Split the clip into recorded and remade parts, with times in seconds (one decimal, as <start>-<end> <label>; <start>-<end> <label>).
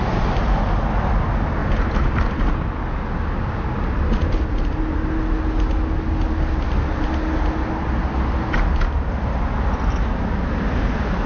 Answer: 0.0-11.3 recorded